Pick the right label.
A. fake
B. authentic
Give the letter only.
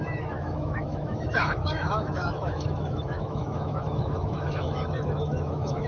A